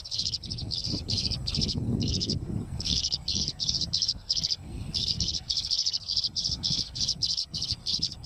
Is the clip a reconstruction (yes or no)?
yes